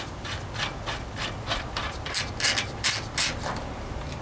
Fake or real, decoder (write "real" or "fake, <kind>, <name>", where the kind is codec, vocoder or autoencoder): real